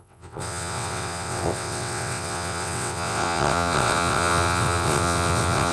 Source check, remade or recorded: remade